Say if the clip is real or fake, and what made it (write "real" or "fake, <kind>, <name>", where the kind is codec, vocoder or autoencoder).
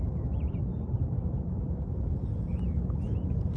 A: real